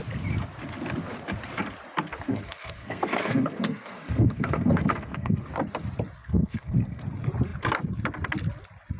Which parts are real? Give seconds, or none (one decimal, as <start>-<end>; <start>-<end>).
0.0-2.3; 5.5-6.2; 7.0-9.0